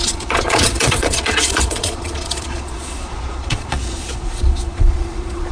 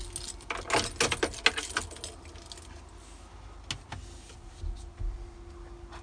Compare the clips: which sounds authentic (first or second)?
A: second